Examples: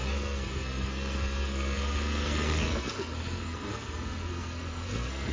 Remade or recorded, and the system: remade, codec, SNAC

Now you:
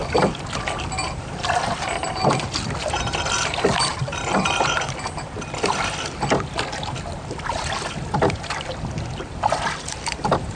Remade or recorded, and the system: recorded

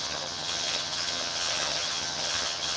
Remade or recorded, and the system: remade, vocoder, HiFi-GAN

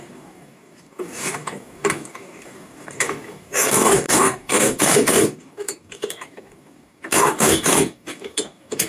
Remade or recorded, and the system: remade, codec, DAC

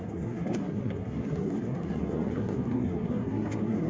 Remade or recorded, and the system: remade, codec, SNAC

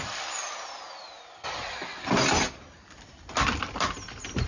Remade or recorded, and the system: recorded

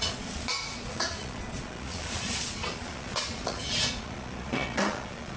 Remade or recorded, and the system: remade, vocoder, Vocos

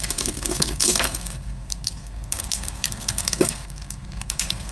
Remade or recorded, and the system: remade, codec, SNAC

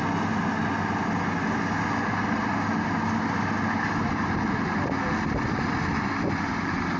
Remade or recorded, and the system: recorded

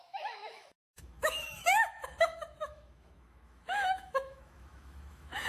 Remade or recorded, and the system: remade, autoencoder, DAC-VAE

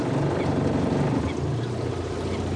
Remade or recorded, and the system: recorded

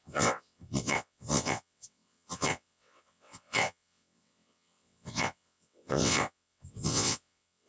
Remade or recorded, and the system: remade, vocoder, WaveNeXt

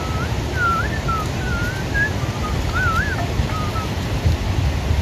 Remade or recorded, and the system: recorded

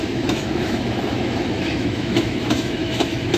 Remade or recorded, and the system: remade, autoencoder, DAC-VAE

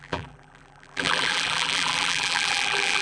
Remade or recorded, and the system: remade, vocoder, BigVGAN v2